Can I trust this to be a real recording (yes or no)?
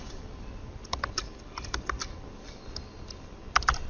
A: yes